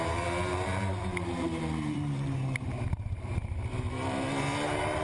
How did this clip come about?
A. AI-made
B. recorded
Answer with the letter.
A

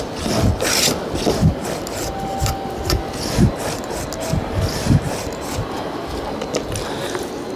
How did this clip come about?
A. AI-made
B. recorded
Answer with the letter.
B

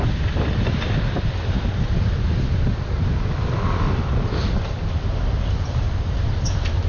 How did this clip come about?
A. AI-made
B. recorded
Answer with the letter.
A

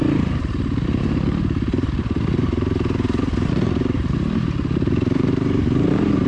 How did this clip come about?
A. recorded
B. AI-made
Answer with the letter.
B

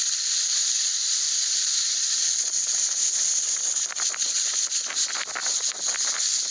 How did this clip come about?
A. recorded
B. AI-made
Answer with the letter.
A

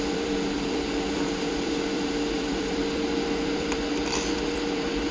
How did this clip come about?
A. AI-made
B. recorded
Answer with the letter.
A